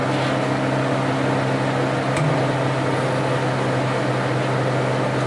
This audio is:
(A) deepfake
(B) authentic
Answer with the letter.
B